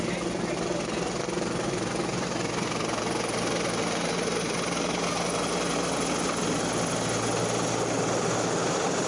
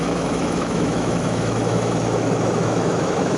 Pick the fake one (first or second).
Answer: second